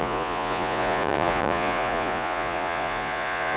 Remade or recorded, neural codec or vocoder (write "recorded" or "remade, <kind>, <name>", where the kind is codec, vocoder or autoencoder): remade, vocoder, Vocos